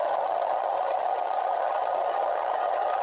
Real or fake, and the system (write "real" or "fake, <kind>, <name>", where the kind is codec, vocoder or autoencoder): fake, vocoder, HiFi-GAN